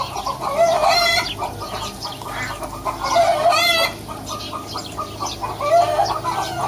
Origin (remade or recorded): recorded